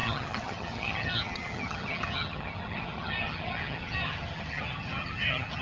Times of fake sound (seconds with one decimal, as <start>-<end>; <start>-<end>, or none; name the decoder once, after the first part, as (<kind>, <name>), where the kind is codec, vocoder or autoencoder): 0.0-5.6 (vocoder, HiFi-GAN)